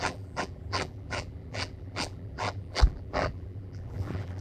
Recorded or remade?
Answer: remade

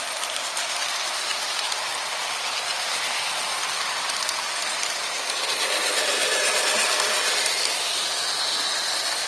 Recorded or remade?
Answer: recorded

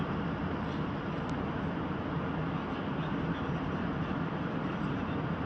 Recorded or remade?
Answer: remade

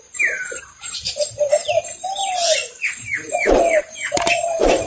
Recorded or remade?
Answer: remade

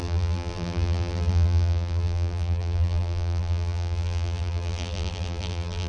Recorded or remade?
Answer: remade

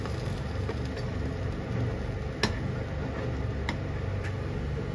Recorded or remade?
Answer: recorded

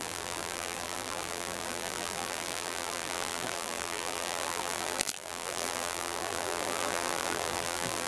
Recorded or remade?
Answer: remade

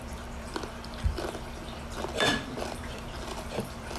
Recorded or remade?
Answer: remade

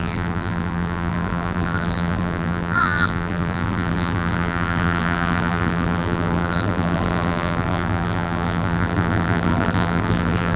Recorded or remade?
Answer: remade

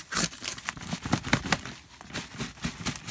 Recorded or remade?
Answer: recorded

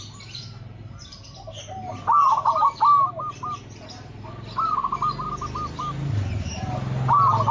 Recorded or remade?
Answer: recorded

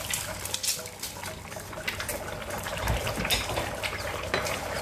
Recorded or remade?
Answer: recorded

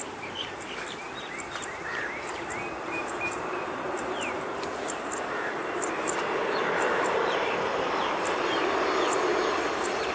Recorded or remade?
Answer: remade